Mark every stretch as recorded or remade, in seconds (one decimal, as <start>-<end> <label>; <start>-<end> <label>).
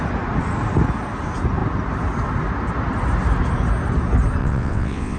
0.0-4.4 recorded; 4.4-5.2 remade